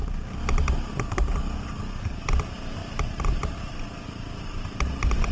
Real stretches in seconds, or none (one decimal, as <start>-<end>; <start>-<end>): 0.0-2.8; 3.8-5.3